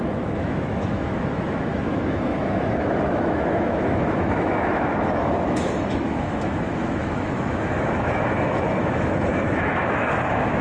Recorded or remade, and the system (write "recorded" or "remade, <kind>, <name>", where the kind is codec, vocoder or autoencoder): remade, autoencoder, DAC-VAE